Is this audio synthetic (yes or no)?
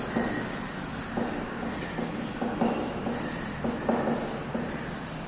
no